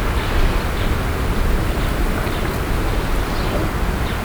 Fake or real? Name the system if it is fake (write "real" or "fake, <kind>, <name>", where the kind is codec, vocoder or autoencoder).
real